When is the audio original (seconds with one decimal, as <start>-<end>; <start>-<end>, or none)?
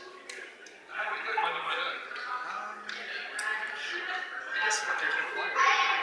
0.0-6.0